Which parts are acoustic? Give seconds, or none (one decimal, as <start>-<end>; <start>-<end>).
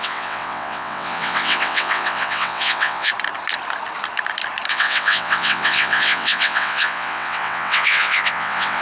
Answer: 3.1-4.7